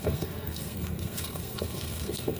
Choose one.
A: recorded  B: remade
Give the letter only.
B